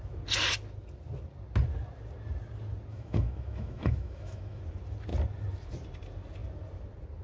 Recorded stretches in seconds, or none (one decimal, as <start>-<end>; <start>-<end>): 0.0-2.9; 4.6-7.2

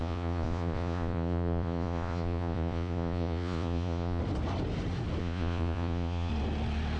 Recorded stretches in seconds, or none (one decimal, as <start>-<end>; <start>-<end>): 4.2-5.2; 6.3-7.0

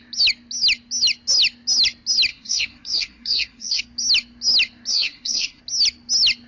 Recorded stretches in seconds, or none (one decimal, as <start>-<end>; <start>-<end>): 0.0-2.3; 3.8-4.9; 5.6-6.5